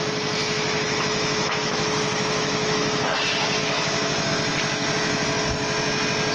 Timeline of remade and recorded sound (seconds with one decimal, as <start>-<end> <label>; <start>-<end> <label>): 0.0-0.4 recorded; 0.4-3.2 remade; 3.2-3.6 recorded; 3.6-4.3 remade; 4.3-6.3 recorded